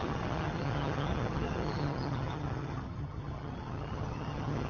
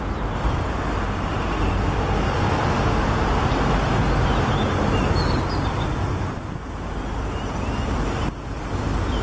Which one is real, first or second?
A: second